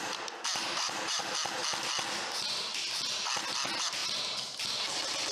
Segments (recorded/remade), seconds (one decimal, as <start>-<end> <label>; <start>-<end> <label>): 0.0-0.6 recorded; 0.6-1.2 remade; 1.2-5.3 recorded